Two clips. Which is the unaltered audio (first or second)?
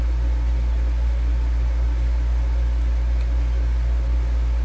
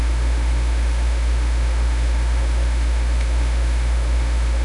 first